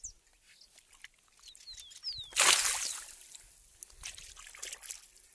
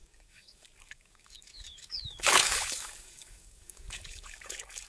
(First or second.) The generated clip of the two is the second